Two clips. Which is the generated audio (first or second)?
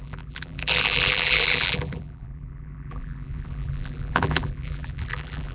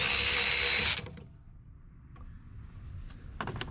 first